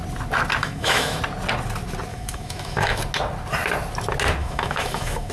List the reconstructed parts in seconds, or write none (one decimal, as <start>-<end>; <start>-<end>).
0.6-1.2; 2.1-3.0; 4.4-5.3